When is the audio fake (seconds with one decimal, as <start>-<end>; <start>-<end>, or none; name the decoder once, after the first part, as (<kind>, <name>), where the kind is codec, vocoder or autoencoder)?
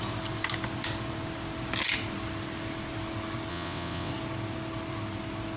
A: 3.5-4.1 (vocoder, WaveNeXt)